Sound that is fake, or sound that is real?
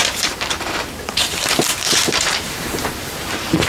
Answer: fake